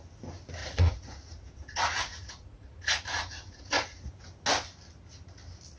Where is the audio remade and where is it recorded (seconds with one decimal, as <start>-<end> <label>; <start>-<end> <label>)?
0.0-0.6 recorded; 0.6-4.1 remade; 4.1-5.8 recorded